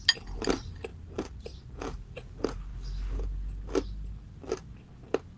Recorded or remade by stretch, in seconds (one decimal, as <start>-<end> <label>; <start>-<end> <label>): 0.0-5.4 recorded